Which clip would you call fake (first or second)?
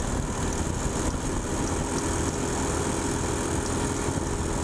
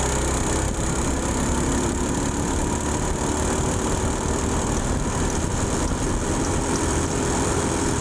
second